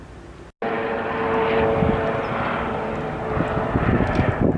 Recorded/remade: recorded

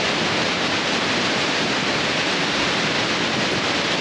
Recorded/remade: recorded